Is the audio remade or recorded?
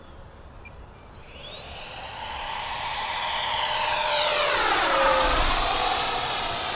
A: remade